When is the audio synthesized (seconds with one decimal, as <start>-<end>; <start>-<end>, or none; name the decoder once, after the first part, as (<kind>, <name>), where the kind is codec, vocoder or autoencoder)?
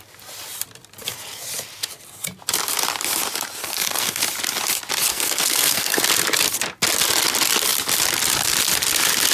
3.6-4.2 (codec, SNAC); 5.1-6.0